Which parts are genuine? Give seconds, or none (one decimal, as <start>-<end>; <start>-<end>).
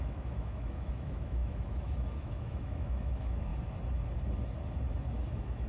3.5-5.3